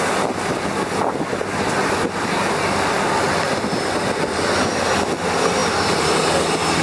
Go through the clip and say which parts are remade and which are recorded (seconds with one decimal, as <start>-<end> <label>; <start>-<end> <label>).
0.0-6.8 recorded

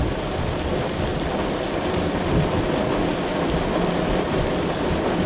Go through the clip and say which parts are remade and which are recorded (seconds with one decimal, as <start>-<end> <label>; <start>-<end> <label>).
0.0-5.3 recorded

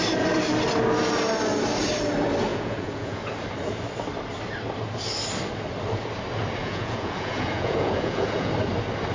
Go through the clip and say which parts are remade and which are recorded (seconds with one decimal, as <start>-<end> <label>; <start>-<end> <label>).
0.0-2.5 recorded; 2.5-3.2 remade; 3.2-6.6 recorded; 6.6-8.5 remade; 8.5-9.1 recorded

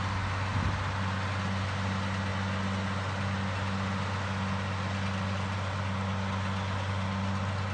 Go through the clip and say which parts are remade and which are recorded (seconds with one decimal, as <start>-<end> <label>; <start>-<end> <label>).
0.0-7.7 recorded

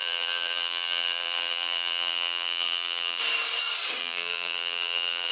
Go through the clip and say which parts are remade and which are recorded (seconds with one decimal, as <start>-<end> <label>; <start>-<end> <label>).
0.0-3.2 remade; 3.2-4.0 recorded; 4.0-5.3 remade

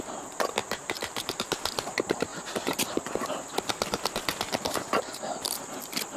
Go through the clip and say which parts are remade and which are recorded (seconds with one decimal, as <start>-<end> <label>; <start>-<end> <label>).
0.0-0.6 recorded; 0.6-1.5 remade; 1.5-2.3 recorded; 2.3-3.1 remade; 3.1-4.3 recorded; 4.3-5.0 remade; 5.0-6.2 recorded

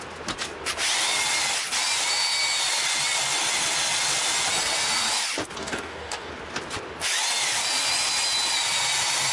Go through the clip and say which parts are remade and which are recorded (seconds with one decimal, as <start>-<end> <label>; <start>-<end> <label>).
0.0-5.6 recorded; 5.6-6.3 remade; 6.3-9.3 recorded